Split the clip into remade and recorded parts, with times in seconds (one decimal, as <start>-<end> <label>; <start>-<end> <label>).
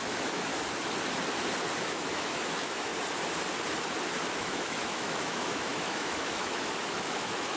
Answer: 0.0-0.5 remade; 0.5-1.8 recorded; 1.8-2.9 remade; 2.9-4.3 recorded; 4.3-7.6 remade